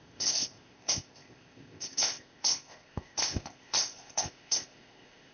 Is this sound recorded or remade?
remade